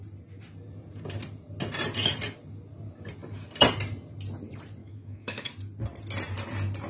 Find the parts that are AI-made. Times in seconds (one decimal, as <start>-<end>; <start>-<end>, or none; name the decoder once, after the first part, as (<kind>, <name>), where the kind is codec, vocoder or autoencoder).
4.8-5.5 (autoencoder, DAC-VAE)